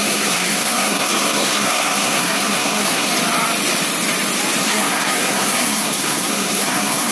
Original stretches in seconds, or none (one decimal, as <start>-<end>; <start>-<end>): 3.1-4.6